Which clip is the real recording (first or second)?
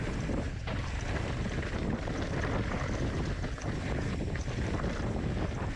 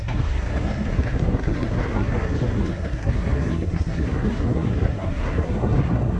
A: first